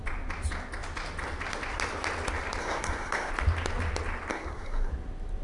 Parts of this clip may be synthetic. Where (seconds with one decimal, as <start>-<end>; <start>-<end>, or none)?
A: 2.6-3.3; 4.3-4.9